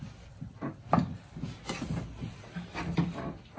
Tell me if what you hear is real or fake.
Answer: real